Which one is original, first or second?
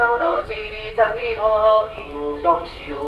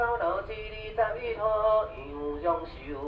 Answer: second